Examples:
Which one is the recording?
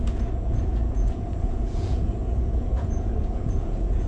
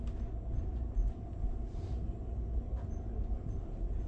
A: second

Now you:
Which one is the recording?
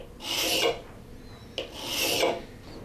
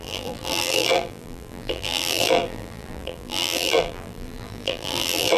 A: first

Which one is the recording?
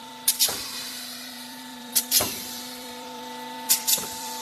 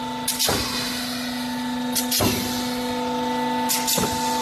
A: second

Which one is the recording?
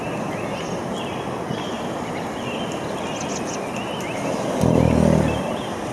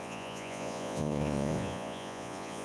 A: first